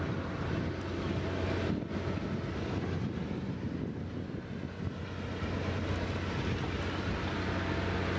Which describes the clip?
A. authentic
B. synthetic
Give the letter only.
A